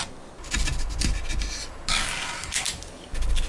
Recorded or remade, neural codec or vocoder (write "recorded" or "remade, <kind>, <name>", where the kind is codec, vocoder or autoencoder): recorded